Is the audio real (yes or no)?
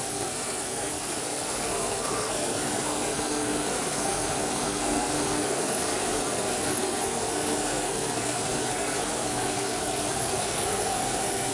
no